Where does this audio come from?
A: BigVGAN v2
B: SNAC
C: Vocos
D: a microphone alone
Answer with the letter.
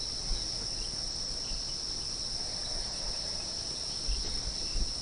D